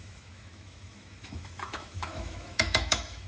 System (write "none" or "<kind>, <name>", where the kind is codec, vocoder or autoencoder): autoencoder, DAC-VAE